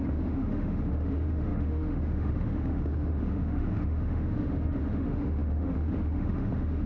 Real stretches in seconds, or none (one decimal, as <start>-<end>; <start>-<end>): none